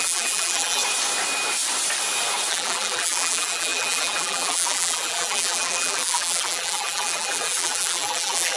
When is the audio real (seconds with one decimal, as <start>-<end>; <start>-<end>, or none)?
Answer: 0.8-2.5